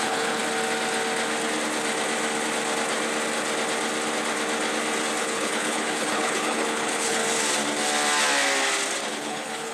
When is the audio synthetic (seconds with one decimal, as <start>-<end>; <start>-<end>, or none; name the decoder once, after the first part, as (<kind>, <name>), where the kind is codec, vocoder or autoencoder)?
0.0-0.4 (codec, HILCodec); 5.2-7.2; 9.1-9.7